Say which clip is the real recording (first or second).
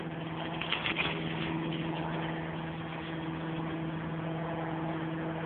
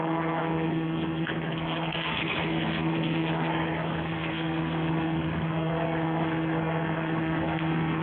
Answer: first